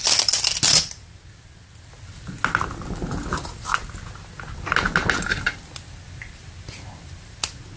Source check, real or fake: real